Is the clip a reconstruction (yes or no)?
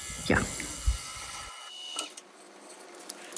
no